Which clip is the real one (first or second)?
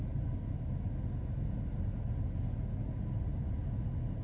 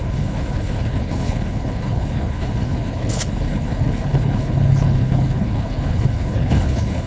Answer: first